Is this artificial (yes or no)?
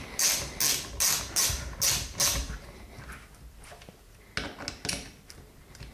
no